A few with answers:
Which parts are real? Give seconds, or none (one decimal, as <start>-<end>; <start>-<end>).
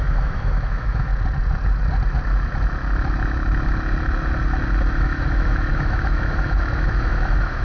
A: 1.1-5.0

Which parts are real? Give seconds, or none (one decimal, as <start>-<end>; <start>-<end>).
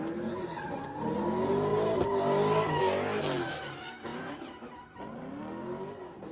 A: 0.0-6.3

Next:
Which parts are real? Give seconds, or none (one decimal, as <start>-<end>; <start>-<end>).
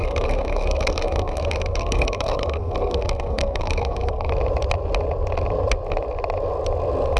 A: 4.3-7.2